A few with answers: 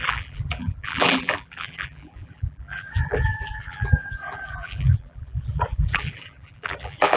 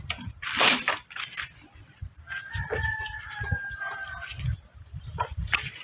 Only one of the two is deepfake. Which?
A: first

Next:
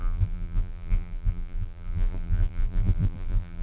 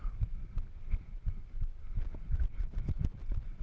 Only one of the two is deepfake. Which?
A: first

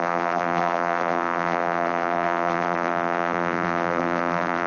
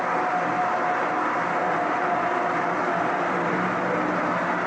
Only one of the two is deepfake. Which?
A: first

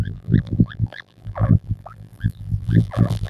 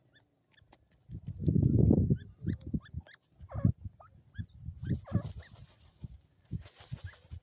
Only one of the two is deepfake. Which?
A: first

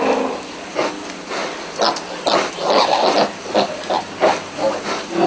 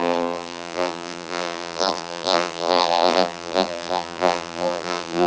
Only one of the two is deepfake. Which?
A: second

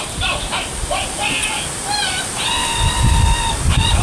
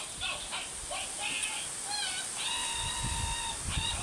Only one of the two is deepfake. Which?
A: first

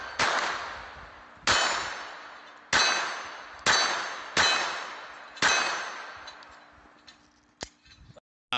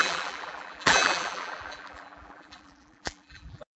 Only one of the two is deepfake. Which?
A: second